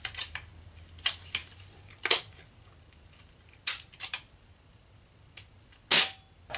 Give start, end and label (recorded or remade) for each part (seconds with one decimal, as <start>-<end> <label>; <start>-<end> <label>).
0.0-2.7 recorded; 2.7-5.0 remade; 5.0-6.6 recorded